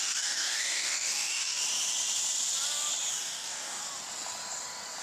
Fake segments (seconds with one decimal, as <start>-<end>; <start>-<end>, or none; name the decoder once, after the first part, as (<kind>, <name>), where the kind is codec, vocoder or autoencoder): 0.0-1.6 (codec, DAC); 3.1-3.8